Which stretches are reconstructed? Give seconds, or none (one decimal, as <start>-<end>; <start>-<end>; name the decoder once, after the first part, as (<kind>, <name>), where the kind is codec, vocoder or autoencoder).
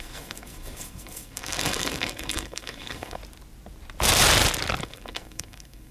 0.0-3.2 (codec, SNAC); 4.8-5.9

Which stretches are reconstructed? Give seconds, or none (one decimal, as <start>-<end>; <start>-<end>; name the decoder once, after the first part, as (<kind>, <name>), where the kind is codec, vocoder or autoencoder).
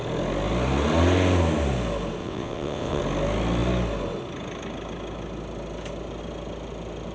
2.2-3.0 (vocoder, WaveNeXt)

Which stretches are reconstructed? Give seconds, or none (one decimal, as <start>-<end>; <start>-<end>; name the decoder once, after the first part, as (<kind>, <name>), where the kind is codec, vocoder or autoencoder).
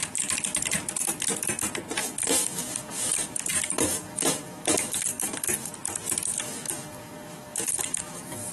2.0-5.7 (codec, DAC); 6.3-8.5